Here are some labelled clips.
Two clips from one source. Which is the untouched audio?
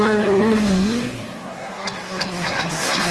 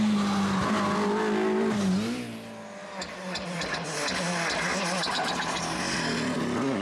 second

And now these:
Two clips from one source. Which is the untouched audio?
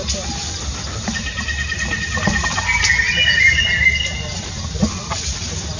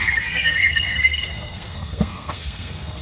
first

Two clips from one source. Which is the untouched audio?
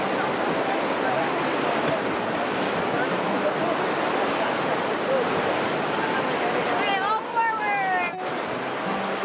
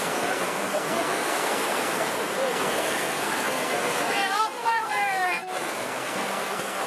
first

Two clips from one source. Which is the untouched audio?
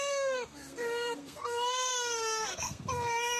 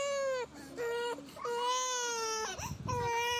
second